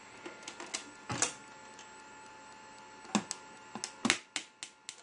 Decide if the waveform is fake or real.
real